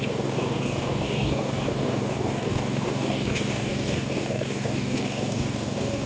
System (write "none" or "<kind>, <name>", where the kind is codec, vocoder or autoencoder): codec, DAC